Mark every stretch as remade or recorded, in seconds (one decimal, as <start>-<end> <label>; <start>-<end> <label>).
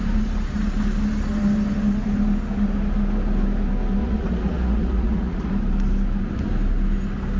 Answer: 0.0-4.0 recorded; 4.0-5.5 remade; 5.5-7.4 recorded